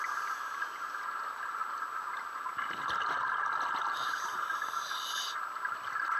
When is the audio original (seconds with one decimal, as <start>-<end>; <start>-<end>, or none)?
0.0-6.2